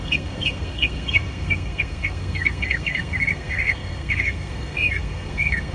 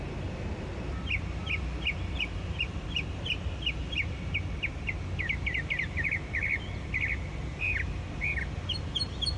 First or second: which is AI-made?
first